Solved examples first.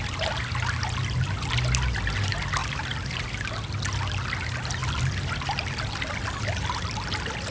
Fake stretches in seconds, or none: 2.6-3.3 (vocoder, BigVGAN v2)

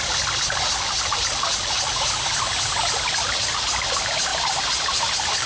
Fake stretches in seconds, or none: none